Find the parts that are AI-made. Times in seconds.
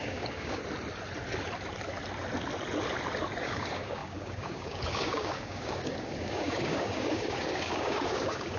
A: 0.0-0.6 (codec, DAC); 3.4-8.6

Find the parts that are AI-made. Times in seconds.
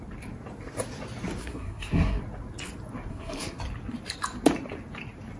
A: 1.4-2.2 (codec, SNAC); 3.1-3.6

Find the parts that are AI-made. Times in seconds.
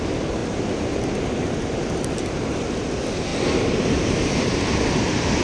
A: none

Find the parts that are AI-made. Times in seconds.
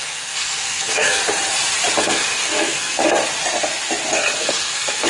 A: 0.0-1.2 (codec, SNAC); 2.0-3.0; 4.4-5.1